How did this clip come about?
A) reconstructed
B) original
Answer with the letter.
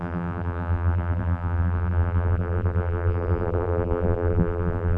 A